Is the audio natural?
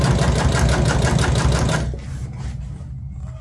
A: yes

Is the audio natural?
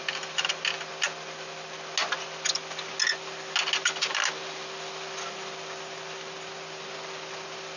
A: yes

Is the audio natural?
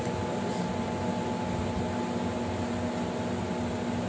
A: yes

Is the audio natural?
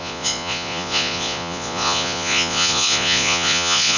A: no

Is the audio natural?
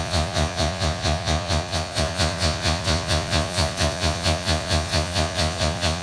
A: no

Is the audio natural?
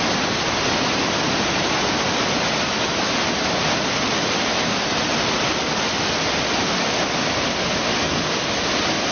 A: yes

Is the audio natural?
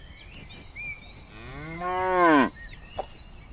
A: yes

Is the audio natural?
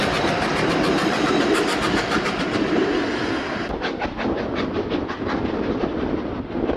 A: yes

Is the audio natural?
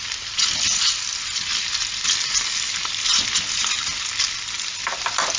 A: yes